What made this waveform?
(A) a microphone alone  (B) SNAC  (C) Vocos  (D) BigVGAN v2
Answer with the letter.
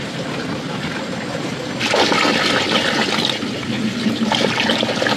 A